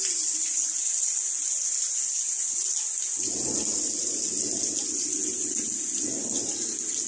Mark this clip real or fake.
real